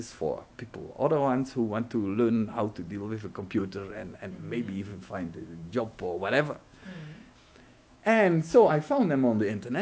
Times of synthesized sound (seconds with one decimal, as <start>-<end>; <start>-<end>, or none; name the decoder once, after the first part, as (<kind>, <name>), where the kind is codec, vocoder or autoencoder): 0.0-0.5 (autoencoder, DAC-VAE); 3.6-9.8